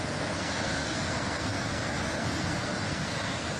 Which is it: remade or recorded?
remade